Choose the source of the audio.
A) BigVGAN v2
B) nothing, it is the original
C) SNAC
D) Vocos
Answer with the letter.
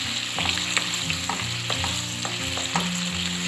B